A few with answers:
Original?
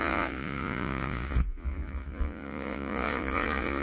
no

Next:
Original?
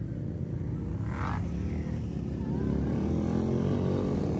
yes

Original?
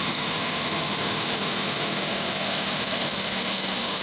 no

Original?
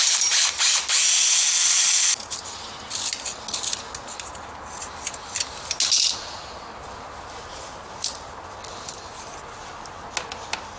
yes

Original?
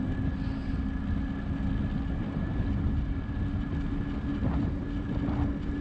yes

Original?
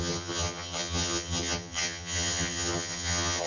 no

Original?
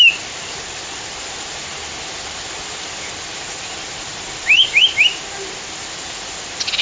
yes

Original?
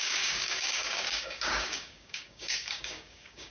no